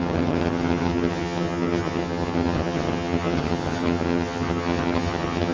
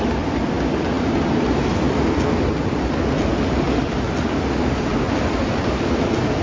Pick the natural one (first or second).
second